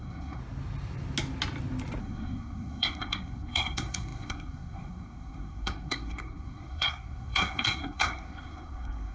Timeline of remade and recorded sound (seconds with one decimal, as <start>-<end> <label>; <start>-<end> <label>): 0.0-0.4 remade; 0.4-2.0 recorded; 2.0-9.1 remade